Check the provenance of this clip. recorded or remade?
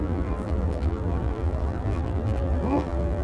remade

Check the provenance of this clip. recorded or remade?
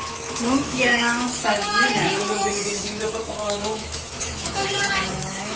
remade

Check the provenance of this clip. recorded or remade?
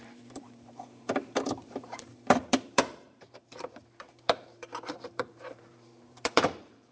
remade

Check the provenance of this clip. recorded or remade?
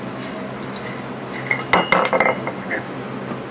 recorded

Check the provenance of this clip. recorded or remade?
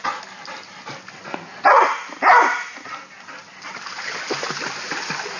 recorded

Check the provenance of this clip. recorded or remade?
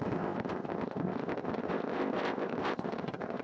remade